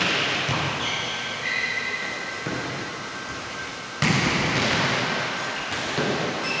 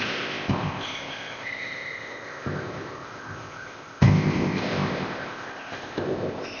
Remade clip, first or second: second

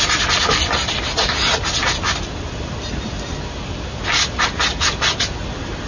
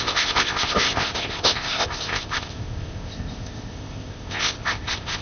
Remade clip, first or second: second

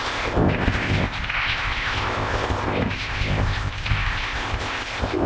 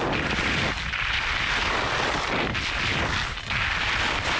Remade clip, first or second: first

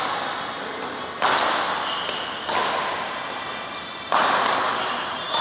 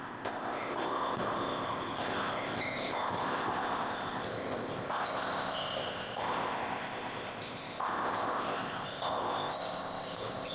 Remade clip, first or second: second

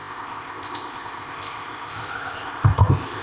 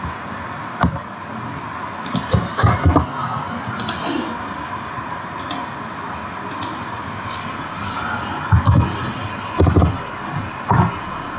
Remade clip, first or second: first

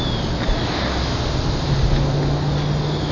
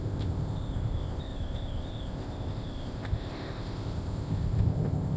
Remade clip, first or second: second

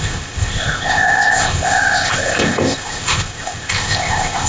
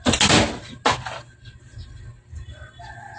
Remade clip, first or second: first